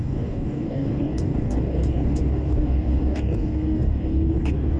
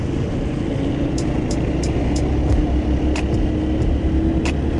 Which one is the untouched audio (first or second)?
second